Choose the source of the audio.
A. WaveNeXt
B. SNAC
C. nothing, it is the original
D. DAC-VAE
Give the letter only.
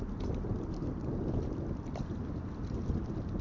C